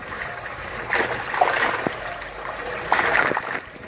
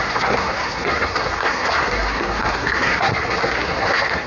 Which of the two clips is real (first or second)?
first